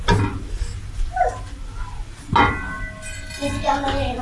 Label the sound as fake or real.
real